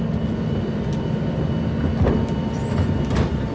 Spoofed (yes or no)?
no